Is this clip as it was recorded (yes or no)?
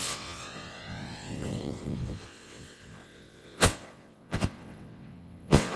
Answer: no